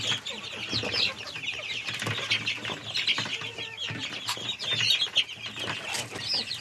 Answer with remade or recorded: recorded